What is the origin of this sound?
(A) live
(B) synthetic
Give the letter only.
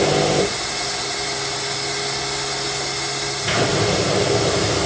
A